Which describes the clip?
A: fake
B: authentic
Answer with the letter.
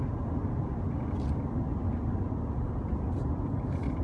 B